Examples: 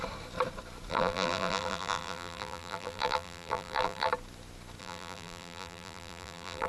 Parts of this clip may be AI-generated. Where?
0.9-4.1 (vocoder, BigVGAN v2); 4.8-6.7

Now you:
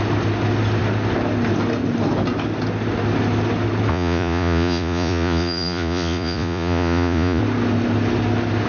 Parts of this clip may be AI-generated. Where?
3.9-7.4 (vocoder, Vocos)